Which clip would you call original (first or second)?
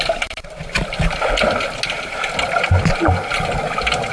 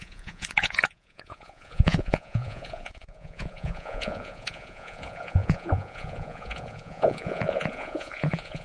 first